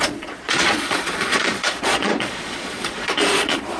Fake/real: fake